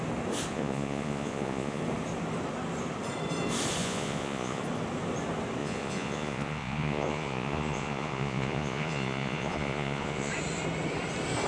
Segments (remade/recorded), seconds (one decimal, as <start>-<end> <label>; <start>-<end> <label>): 0.0-0.5 recorded; 0.5-1.8 remade; 1.8-3.8 recorded; 3.8-4.6 remade; 4.6-5.6 recorded; 5.6-10.3 remade; 10.3-11.5 recorded